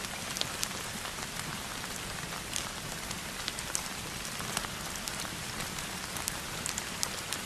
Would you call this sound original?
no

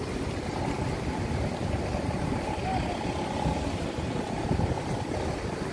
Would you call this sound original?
yes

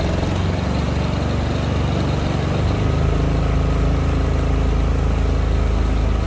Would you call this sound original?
yes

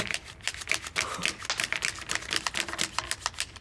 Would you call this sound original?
yes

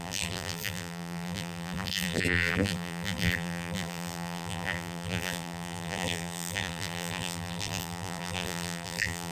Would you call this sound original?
no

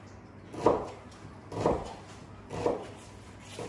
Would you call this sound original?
yes